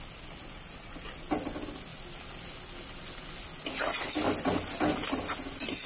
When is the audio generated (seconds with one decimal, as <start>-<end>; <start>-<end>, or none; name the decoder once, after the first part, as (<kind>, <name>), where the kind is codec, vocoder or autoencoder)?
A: none